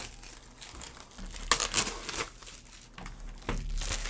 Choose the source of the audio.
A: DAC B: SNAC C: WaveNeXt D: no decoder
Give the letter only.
D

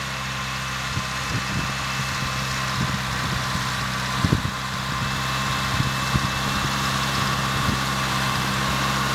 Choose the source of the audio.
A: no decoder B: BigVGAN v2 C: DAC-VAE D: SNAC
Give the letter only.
A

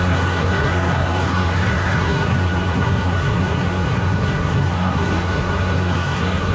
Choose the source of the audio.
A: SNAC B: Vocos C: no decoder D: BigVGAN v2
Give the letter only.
A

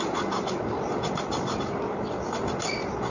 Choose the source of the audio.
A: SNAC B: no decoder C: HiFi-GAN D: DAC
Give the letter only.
B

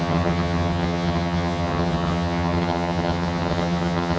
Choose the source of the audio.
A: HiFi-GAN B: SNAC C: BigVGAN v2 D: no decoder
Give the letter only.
A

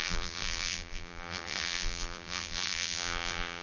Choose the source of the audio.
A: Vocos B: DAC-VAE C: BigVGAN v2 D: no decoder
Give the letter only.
C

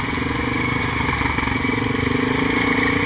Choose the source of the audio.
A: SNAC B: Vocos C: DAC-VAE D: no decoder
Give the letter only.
D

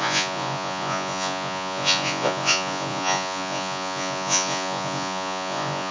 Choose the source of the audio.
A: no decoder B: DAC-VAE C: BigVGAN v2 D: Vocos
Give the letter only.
D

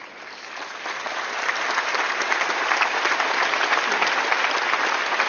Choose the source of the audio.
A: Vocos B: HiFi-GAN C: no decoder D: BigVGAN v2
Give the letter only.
C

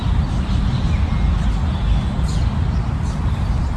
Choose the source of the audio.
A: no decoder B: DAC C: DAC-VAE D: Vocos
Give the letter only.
A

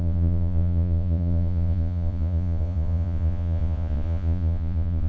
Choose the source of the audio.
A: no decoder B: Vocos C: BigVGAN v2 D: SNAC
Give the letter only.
B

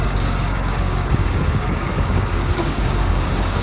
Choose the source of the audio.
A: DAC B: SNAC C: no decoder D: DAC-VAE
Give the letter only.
A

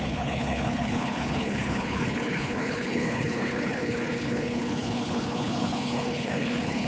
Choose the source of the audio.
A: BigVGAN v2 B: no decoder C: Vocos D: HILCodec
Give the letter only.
D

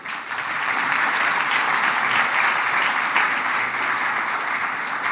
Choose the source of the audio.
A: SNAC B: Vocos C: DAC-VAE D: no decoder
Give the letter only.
D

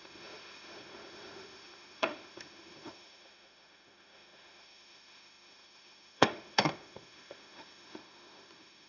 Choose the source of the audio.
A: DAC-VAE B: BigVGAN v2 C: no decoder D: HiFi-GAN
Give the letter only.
A